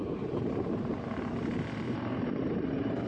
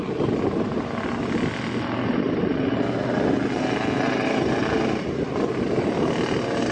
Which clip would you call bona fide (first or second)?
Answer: second